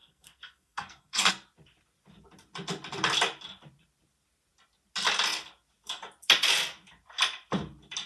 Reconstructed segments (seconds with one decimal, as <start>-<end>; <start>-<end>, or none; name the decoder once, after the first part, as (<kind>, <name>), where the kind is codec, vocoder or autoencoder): 0.0-1.3 (codec, SNAC)